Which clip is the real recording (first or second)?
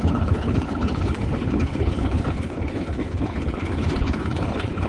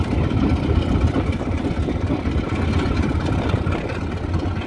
second